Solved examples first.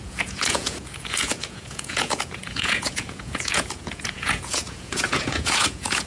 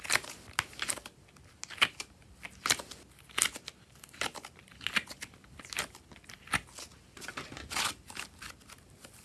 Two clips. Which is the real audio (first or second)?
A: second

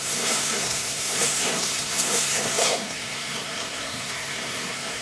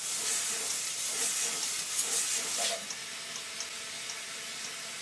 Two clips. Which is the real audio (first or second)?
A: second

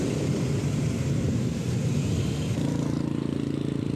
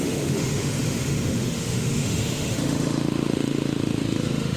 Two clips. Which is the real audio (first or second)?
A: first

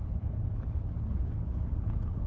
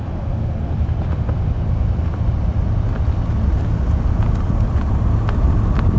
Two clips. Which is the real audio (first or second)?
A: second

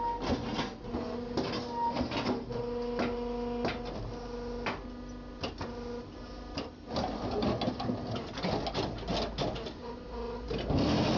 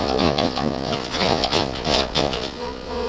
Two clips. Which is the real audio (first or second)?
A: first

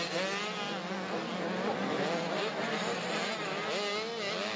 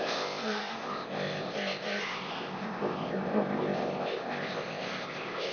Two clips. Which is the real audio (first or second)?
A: first